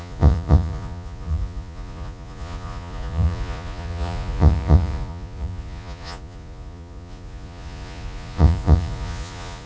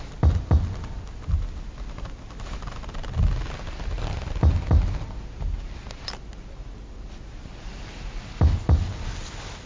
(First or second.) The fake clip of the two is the first